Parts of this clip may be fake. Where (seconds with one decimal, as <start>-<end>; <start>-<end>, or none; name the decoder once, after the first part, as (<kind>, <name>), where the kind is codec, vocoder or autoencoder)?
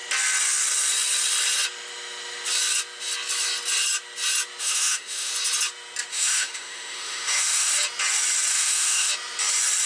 4.6-5.3 (autoencoder, DAC-VAE); 6.1-7.7; 8.5-9.1